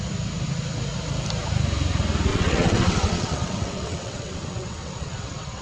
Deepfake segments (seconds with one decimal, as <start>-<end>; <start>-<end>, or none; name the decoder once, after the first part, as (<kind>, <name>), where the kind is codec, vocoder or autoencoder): 2.3-5.6 (vocoder, WaveNeXt)